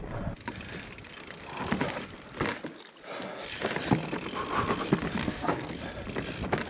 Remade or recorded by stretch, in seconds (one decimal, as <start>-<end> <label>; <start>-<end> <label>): 0.0-5.2 recorded; 5.2-5.8 remade; 5.8-6.7 recorded

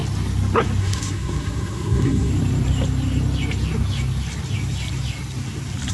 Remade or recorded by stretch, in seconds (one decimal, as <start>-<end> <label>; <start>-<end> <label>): 0.0-0.8 recorded; 0.8-2.3 remade; 2.3-5.9 recorded